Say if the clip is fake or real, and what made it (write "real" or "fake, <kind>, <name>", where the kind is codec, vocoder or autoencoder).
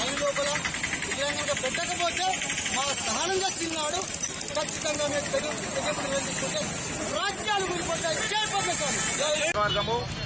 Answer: real